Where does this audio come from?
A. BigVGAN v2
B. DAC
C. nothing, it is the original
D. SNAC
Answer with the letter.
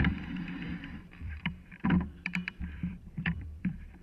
A